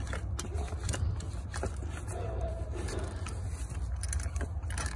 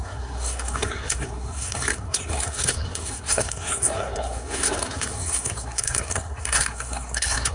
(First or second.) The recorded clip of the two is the first